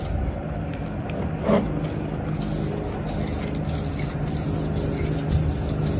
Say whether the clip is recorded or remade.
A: recorded